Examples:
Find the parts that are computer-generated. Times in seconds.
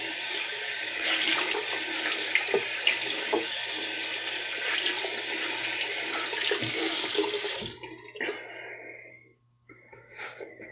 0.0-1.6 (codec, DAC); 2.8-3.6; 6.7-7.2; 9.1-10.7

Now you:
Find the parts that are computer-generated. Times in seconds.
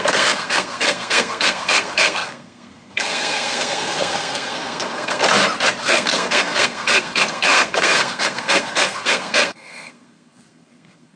0.0-5.2 (codec, SNAC); 5.8-11.2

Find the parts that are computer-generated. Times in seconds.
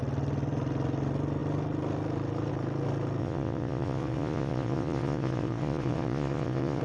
3.2-6.8 (vocoder, Vocos)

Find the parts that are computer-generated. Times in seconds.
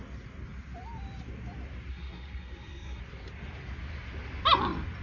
1.9-3.0 (codec, SNAC)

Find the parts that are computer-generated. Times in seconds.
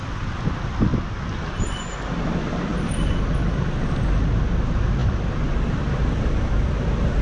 none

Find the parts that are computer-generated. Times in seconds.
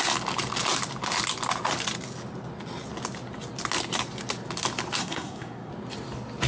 5.0-5.7 (codec, SNAC)